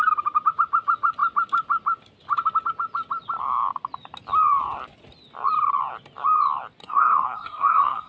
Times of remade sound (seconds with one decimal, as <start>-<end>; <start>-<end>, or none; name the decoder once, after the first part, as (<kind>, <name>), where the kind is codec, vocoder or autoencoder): 6.8-8.1 (codec, SNAC)